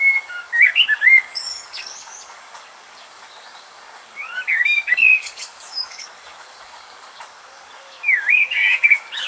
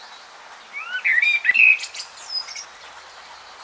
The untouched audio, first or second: second